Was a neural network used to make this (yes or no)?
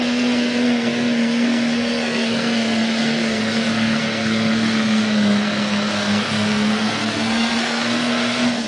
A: yes